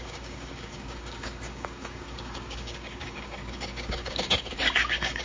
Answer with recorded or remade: remade